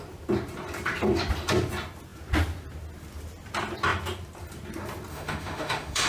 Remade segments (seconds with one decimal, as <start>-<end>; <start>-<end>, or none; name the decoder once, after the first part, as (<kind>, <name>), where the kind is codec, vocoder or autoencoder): 5.1-6.1 (autoencoder, DAC-VAE)

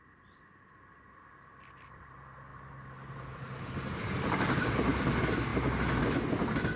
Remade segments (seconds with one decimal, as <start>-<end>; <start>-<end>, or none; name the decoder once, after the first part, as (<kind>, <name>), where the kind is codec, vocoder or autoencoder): 2.5-5.0 (vocoder, BigVGAN v2)

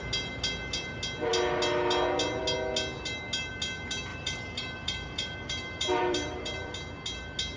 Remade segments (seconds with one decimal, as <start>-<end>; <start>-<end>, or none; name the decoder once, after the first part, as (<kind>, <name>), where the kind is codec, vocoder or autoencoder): 4.1-6.7 (vocoder, BigVGAN v2)

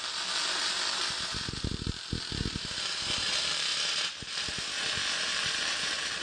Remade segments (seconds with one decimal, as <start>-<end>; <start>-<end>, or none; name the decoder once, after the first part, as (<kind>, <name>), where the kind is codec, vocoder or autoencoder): 0.0-3.7 (vocoder, BigVGAN v2); 5.2-6.2

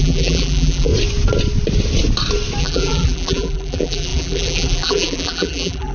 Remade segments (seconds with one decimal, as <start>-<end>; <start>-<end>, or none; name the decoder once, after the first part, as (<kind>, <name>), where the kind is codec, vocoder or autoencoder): 0.0-0.9 (vocoder, BigVGAN v2); 2.6-5.9

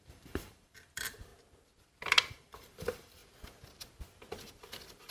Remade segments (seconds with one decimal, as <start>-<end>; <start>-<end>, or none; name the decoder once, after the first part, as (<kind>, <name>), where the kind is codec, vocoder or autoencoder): 0.0-1.3 (vocoder, BigVGAN v2); 2.3-3.2

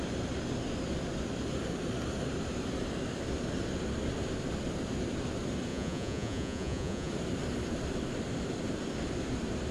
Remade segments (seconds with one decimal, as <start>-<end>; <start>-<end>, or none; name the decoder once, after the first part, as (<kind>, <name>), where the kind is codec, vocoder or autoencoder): 5.7-7.1 (vocoder, Vocos)